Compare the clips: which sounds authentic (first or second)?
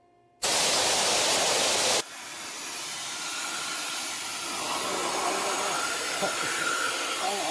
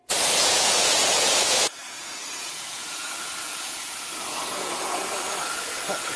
first